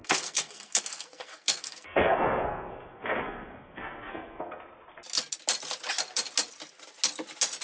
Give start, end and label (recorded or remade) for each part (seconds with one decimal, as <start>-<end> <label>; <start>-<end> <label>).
0.0-4.6 remade; 4.6-7.6 recorded